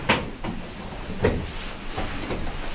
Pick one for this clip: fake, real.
real